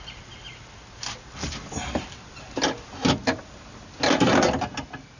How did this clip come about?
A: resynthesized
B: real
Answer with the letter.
B